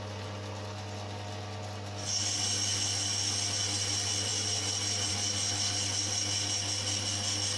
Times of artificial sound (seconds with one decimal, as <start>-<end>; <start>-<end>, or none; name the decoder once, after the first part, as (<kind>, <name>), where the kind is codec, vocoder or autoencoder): none